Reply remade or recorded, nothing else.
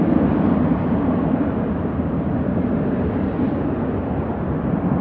remade